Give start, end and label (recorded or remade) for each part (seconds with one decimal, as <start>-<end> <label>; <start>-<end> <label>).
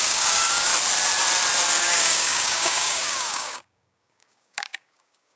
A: 0.0-0.7 remade; 0.7-1.8 recorded; 1.8-5.4 remade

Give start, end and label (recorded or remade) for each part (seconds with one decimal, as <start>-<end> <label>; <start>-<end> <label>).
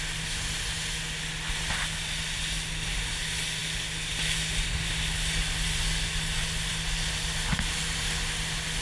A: 0.0-8.8 recorded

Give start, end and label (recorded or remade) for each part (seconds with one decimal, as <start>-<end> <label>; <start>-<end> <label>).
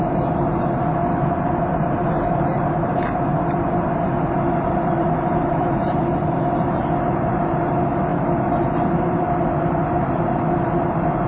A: 0.0-2.0 recorded; 2.0-2.9 remade; 2.9-8.1 recorded; 8.1-10.3 remade; 10.3-11.3 recorded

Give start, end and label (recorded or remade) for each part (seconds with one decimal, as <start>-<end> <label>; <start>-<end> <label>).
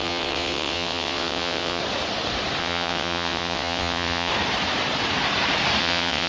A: 0.0-1.8 remade; 1.8-2.6 recorded; 2.6-4.3 remade; 4.3-5.8 recorded; 5.8-6.3 remade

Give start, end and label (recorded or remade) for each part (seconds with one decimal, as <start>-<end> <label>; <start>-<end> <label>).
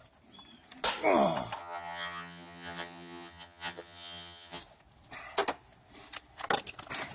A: 0.0-1.6 recorded; 1.6-4.6 remade; 4.6-7.1 recorded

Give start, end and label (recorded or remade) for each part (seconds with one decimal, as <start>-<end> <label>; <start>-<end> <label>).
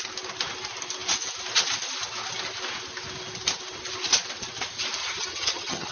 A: 0.0-5.0 recorded; 5.0-5.9 remade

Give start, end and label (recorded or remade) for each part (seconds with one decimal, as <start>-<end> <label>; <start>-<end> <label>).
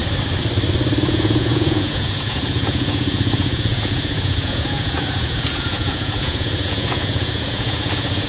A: 0.0-1.0 recorded; 1.0-8.3 remade